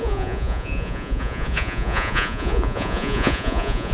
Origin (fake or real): fake